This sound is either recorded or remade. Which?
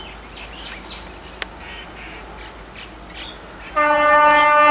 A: recorded